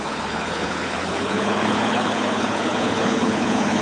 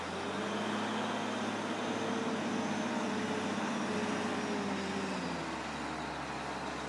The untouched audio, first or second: second